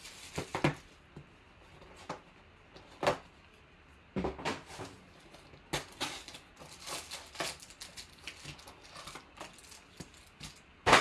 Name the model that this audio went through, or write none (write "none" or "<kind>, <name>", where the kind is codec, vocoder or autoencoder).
none